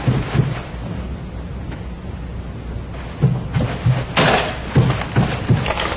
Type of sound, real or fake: real